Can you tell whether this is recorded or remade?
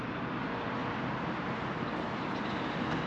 recorded